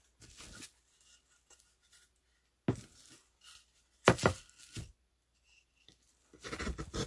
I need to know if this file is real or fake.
real